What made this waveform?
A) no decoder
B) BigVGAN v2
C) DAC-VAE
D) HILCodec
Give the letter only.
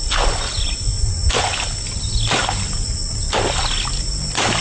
A